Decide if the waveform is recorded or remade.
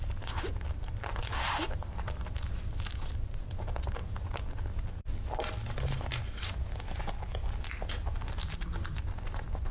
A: recorded